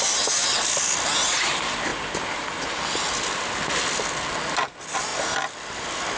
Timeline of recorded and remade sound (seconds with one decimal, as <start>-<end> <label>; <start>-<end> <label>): 0.0-6.2 recorded